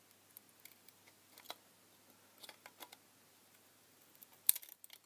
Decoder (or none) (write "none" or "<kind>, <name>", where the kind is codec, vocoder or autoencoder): none